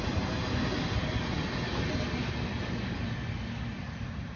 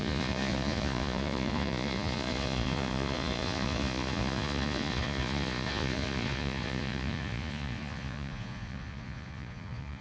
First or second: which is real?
first